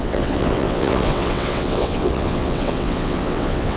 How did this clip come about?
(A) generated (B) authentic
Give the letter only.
A